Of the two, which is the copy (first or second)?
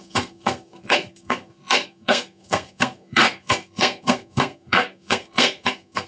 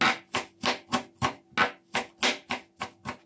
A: first